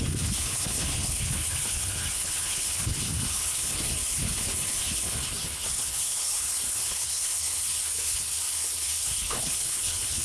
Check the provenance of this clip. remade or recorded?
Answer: remade